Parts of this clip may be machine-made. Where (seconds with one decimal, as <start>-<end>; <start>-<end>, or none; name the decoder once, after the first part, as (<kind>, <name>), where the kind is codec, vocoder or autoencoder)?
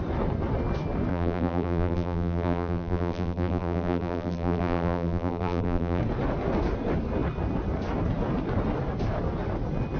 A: 1.1-6.0 (vocoder, BigVGAN v2)